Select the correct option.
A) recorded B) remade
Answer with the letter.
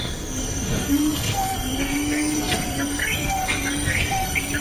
B